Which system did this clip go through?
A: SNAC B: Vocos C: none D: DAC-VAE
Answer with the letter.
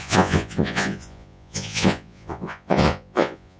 B